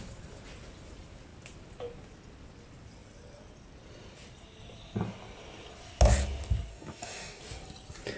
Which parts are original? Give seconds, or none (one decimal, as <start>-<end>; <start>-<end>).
0.0-6.7; 7.4-8.2